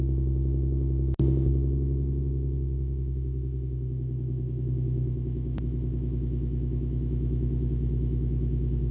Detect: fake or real fake